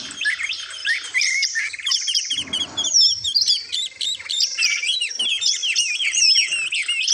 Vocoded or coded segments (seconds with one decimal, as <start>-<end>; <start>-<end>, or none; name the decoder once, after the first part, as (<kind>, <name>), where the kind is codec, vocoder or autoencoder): 0.8-5.1 (vocoder, BigVGAN v2); 5.6-6.2